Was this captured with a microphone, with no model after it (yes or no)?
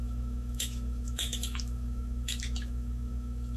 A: no